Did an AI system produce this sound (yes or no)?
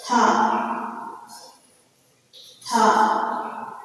yes